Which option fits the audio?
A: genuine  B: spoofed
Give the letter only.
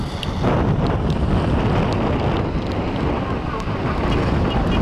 A